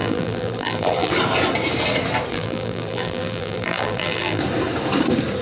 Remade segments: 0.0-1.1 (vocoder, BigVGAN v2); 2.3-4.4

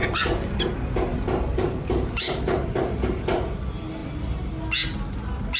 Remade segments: 0.0-0.6 (vocoder, BigVGAN v2); 1.1-3.6